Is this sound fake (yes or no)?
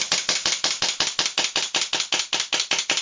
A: no